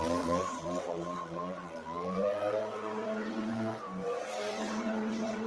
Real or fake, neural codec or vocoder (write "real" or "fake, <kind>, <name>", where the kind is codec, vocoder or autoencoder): fake, vocoder, WaveNeXt